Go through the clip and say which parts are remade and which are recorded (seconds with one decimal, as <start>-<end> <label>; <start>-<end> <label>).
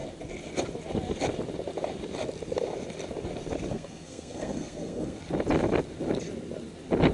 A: 0.0-3.7 recorded; 3.7-5.2 remade; 5.2-7.1 recorded